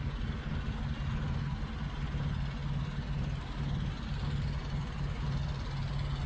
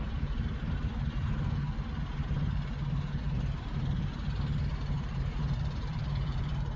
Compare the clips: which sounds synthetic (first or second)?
second